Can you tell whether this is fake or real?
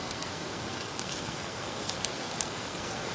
fake